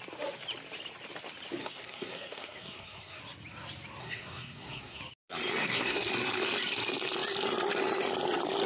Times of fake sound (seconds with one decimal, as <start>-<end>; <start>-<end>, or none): 1.6-3.2; 4.0-5.0; 5.6-6.1